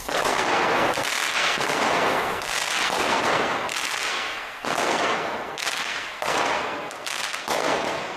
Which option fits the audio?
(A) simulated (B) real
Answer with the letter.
A